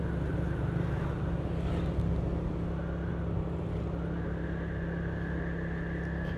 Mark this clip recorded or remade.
recorded